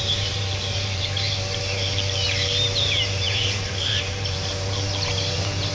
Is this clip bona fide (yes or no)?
no